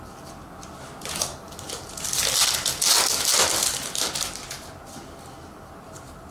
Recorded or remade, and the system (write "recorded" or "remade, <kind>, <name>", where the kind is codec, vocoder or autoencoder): recorded